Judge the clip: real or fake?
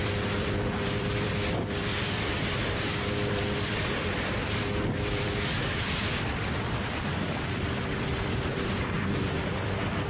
fake